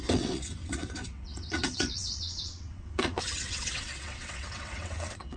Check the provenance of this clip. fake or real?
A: fake